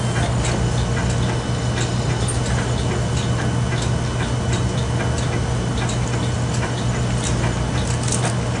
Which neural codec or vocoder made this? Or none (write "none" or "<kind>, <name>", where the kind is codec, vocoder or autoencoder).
none